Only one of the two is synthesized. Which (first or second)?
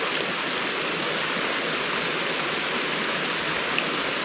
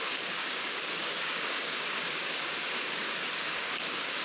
second